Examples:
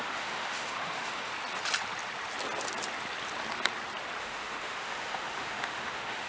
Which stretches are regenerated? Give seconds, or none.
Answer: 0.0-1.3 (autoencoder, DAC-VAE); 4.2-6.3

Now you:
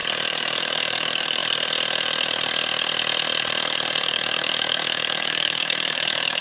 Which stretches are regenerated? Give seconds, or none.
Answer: 0.6-1.4 (autoencoder, DAC-VAE); 4.0-6.4

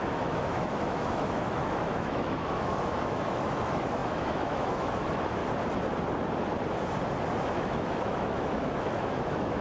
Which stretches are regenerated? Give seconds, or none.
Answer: 0.0-5.4 (autoencoder, DAC-VAE); 7.5-9.6